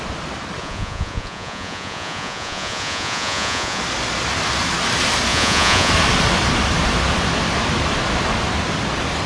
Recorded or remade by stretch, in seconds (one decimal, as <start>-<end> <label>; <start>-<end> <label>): 0.0-0.6 recorded; 0.6-3.8 remade; 3.8-5.3 recorded; 5.3-5.9 remade; 5.9-9.3 recorded